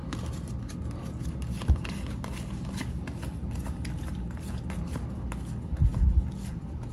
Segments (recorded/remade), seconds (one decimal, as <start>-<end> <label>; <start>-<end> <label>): 0.0-6.9 recorded